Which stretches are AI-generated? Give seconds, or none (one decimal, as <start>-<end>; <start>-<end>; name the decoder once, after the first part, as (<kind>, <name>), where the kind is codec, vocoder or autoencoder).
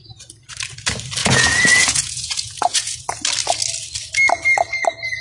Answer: 1.2-3.0 (vocoder, Vocos)